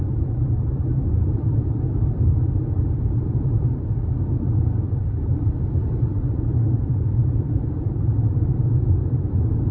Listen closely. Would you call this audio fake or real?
fake